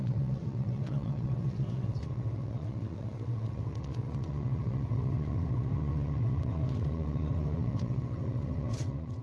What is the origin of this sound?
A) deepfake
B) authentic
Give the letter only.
A